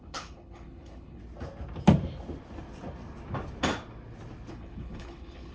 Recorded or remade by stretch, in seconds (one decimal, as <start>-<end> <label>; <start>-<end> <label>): 0.0-1.2 remade; 1.2-4.5 recorded; 4.5-5.5 remade